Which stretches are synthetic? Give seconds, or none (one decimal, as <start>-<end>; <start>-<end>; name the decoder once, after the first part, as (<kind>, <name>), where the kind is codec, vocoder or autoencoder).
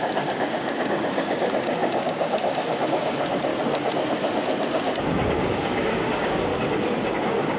0.0-3.5 (codec, DAC); 5.0-6.5; 7.1-7.6